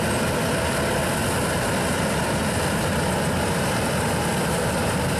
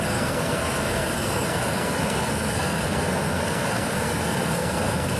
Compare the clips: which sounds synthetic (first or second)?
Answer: second